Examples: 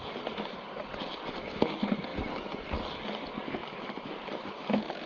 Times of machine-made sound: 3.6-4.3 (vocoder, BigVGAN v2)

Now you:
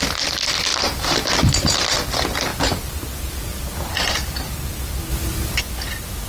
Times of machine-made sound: 0.7-1.3 (vocoder, BigVGAN v2); 2.5-5.7

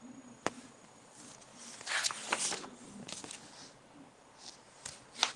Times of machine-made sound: none

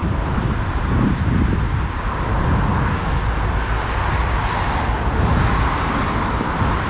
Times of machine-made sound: 0.0-2.0 (vocoder, BigVGAN v2)

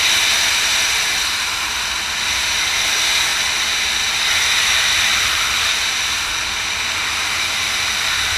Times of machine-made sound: none